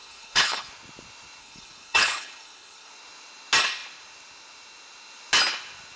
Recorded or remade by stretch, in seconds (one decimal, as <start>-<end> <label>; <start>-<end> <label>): 0.0-0.7 remade; 0.7-1.4 recorded; 1.4-2.9 remade; 2.9-6.0 recorded